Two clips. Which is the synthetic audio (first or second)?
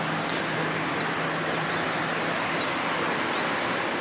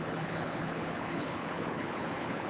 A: second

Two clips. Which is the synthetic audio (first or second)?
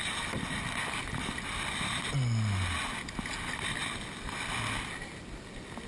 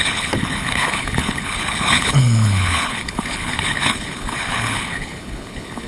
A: second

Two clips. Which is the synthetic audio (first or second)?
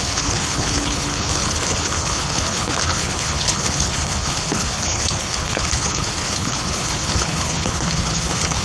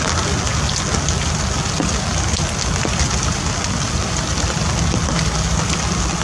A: first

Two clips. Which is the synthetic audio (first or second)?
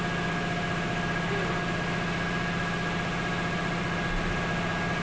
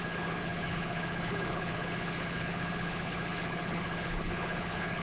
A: second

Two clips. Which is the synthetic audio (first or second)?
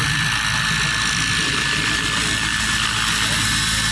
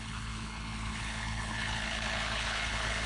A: second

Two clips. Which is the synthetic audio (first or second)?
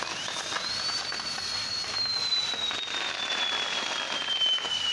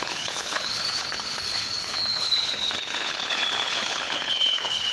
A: second